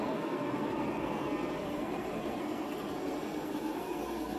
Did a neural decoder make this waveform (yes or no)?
yes